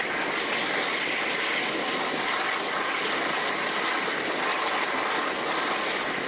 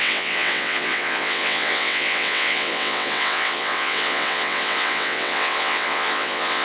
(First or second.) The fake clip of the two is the second